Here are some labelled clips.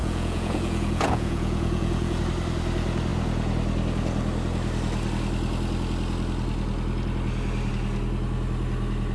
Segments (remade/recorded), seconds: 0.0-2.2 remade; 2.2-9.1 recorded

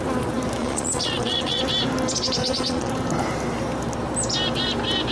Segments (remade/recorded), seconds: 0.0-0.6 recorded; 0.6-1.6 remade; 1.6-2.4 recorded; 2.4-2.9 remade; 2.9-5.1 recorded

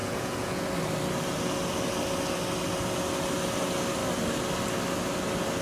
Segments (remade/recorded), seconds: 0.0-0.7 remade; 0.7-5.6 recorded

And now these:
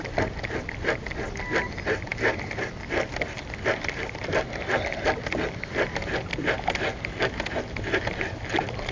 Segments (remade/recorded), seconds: 0.0-8.9 recorded

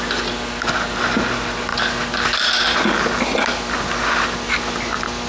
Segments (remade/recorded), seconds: 0.0-5.3 recorded